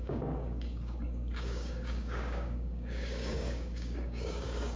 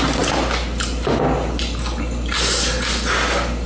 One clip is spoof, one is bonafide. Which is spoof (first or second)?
first